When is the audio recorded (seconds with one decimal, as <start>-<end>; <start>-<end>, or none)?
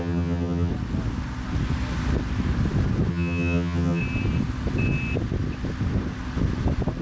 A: 0.7-3.1; 4.0-7.0